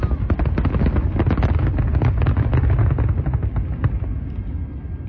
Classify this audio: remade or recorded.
recorded